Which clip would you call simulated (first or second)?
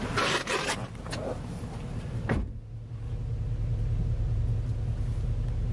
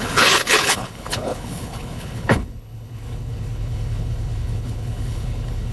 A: second